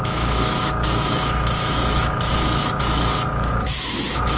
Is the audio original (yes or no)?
no